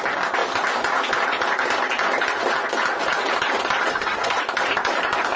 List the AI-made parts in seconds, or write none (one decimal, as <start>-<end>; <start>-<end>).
3.9-4.4